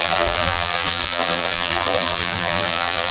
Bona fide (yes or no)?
no